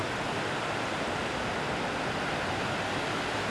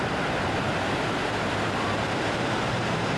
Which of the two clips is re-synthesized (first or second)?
second